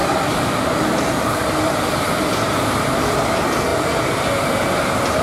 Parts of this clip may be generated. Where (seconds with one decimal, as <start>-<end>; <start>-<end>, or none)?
none